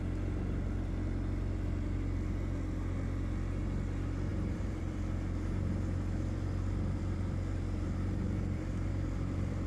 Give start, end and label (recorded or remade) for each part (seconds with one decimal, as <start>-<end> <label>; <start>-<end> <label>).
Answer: 0.0-4.3 recorded; 4.3-9.7 remade